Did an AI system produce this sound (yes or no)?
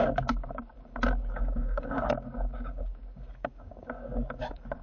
yes